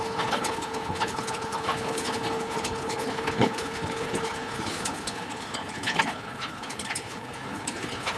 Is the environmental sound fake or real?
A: fake